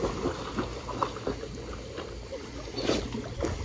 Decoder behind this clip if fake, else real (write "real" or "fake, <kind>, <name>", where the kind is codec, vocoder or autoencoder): real